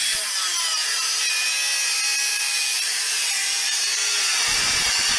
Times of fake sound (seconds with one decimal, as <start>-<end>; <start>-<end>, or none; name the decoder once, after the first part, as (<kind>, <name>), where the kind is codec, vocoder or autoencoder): 0.0-1.2 (vocoder, BigVGAN v2); 2.3-5.2